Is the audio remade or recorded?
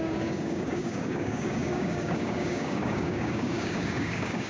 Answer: remade